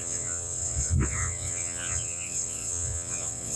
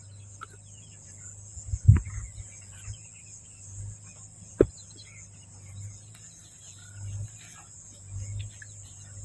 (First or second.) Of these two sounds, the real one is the second